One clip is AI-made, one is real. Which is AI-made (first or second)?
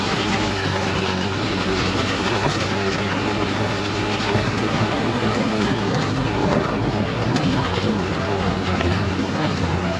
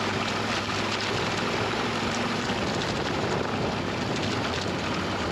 first